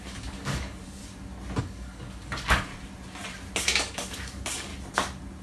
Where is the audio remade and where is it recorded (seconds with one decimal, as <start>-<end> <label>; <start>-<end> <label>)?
0.0-1.0 remade; 1.0-1.6 recorded; 1.6-2.7 remade; 2.7-3.6 recorded; 3.6-4.7 remade; 4.7-5.4 recorded